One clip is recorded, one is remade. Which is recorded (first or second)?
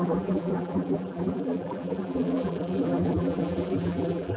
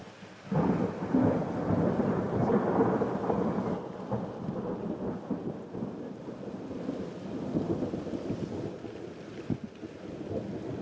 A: second